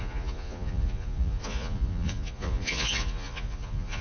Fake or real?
fake